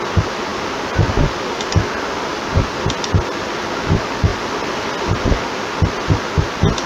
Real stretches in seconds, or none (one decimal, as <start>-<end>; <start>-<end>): 0.0-6.9